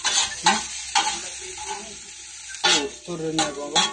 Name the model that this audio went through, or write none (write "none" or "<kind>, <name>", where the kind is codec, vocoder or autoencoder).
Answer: none